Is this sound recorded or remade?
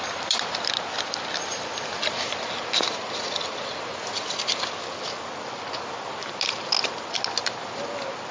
recorded